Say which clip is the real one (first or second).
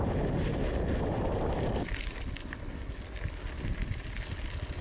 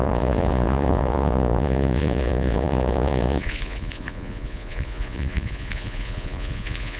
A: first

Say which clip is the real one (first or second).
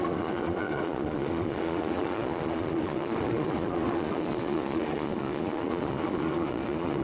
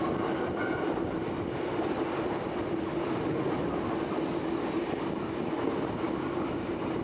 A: second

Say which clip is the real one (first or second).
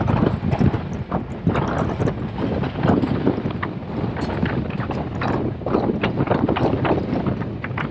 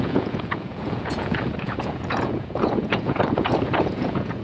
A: first